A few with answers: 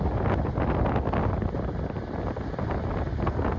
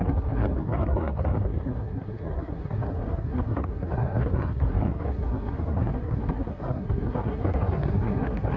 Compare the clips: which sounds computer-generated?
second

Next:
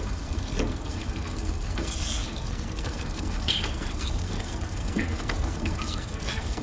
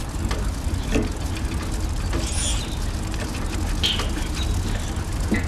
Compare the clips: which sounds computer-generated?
first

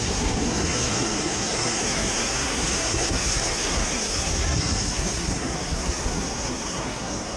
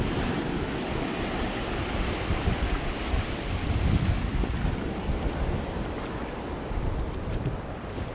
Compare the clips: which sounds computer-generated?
first